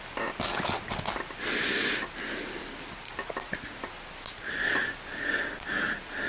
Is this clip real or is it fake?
real